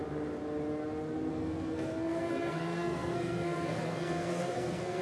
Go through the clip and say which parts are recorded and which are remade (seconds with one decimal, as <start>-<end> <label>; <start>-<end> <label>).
0.0-1.3 recorded; 1.3-5.0 remade